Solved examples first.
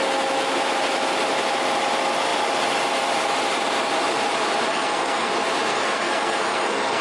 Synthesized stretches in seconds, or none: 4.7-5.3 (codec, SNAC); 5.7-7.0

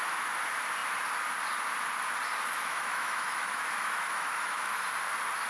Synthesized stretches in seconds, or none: 2.5-4.8 (autoencoder, DAC-VAE)